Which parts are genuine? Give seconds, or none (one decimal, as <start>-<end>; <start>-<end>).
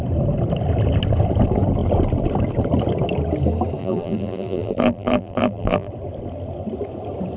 0.0-3.8; 5.9-7.4